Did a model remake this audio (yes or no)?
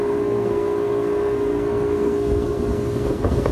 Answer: yes